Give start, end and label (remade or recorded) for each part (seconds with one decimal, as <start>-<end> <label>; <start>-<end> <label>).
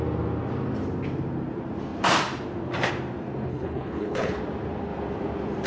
0.0-3.5 recorded; 3.5-4.4 remade; 4.4-5.7 recorded